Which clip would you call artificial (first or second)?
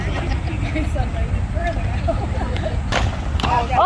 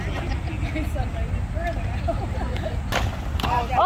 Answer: first